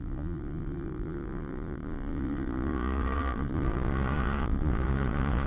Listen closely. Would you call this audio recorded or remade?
remade